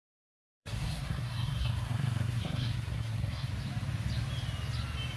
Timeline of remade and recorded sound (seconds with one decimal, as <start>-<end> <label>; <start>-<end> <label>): 0.0-0.4 recorded; 0.4-3.5 remade; 3.5-5.2 recorded